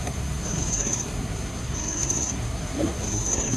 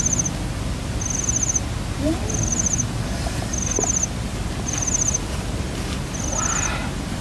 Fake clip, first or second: first